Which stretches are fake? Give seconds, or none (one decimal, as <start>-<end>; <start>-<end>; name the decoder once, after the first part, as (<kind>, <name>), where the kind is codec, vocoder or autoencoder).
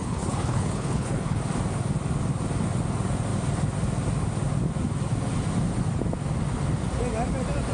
0.0-1.4 (codec, HILCodec)